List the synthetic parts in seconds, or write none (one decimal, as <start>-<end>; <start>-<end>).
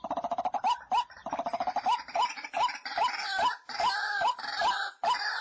none